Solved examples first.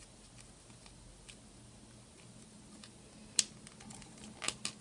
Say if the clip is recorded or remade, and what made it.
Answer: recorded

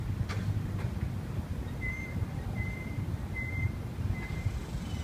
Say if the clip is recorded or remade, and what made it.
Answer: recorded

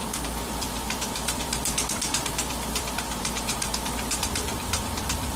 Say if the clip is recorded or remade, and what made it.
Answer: remade, vocoder, BigVGAN v2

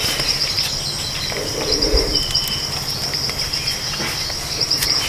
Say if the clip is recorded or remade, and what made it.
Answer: recorded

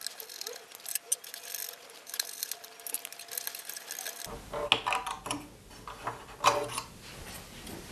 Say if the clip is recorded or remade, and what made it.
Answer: recorded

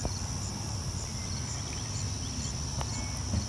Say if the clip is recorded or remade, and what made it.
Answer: recorded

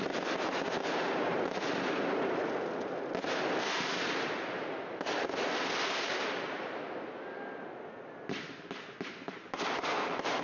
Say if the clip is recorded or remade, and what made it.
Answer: recorded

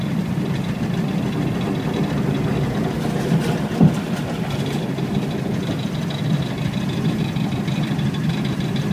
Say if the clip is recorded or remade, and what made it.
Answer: remade, vocoder, BigVGAN v2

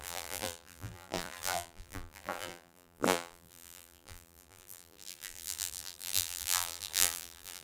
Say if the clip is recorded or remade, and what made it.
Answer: remade, vocoder, BigVGAN v2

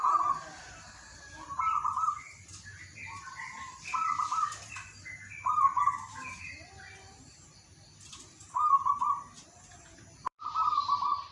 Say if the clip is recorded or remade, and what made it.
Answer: remade, vocoder, BigVGAN v2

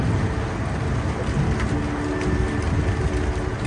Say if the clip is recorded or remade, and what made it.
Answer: recorded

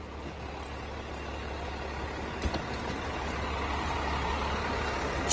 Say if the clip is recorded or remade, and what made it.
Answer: recorded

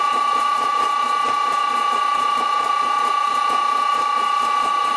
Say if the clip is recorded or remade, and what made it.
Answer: remade, vocoder, BigVGAN v2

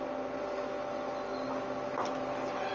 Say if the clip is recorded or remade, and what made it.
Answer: recorded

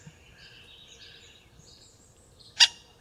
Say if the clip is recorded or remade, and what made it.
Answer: remade, vocoder, BigVGAN v2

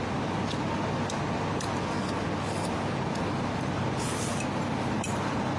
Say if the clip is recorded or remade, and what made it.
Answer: recorded